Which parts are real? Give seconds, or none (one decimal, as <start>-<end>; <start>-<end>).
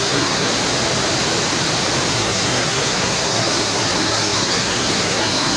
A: 0.5-2.1